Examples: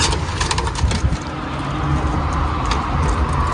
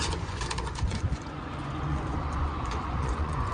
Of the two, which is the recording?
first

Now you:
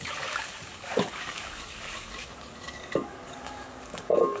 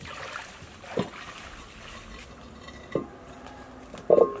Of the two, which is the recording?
second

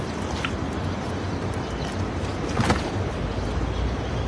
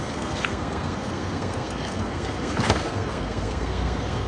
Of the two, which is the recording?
first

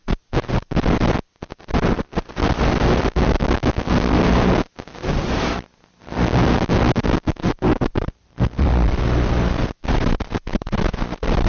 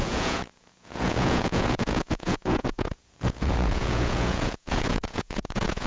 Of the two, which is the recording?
first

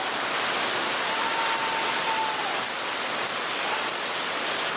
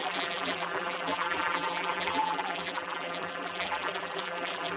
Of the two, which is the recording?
first